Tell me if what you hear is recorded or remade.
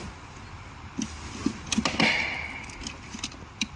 recorded